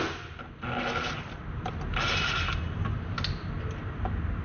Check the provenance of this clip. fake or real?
real